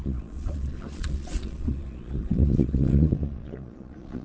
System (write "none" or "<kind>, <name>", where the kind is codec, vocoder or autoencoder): vocoder, Vocos